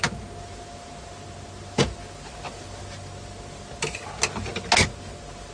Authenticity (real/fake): real